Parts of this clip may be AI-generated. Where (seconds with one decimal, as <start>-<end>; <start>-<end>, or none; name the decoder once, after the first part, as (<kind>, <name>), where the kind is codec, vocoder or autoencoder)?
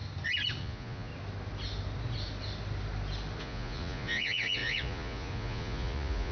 0.6-1.1 (vocoder, Vocos); 3.4-6.3